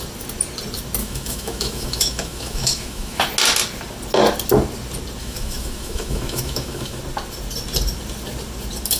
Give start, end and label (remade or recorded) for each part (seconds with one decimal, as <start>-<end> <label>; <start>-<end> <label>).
0.0-1.0 recorded; 1.0-3.2 remade; 3.2-5.2 recorded; 5.2-7.0 remade; 7.0-9.0 recorded